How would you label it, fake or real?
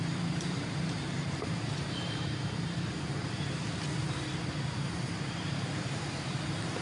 fake